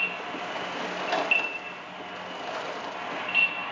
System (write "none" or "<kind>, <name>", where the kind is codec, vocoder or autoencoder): none